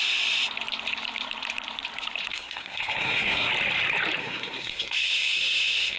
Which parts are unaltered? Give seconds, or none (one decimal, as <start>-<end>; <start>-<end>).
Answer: 0.0-2.3; 3.5-4.2